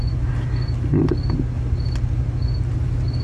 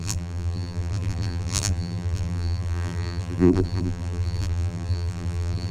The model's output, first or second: second